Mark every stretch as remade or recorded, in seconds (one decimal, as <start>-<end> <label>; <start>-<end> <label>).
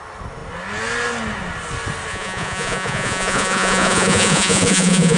0.0-2.1 recorded; 2.1-5.2 remade